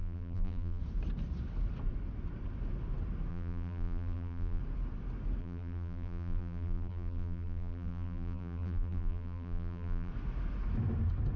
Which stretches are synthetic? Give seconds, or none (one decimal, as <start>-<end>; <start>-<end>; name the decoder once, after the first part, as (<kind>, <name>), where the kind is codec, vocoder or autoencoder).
0.0-0.8 (vocoder, BigVGAN v2); 3.3-4.6; 5.4-10.1